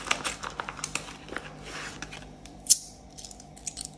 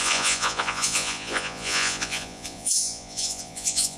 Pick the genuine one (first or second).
first